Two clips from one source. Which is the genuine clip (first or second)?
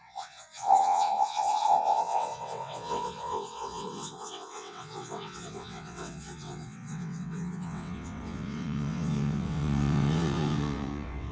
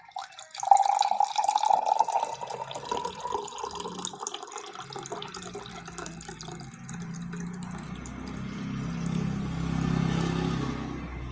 second